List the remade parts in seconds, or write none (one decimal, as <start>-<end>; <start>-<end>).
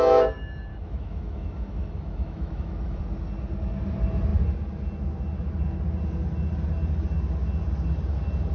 0.7-3.0